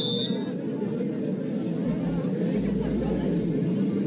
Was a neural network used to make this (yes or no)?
no